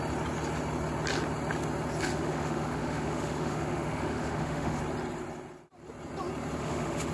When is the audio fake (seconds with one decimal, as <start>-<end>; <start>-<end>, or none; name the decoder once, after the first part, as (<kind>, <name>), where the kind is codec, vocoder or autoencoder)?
2.0-4.8 (autoencoder, DAC-VAE); 6.6-7.1